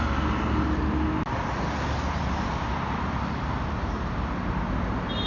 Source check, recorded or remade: recorded